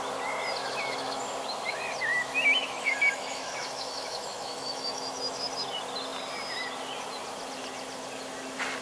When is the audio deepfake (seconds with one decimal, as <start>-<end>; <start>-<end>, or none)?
0.6-1.2; 2.1-5.5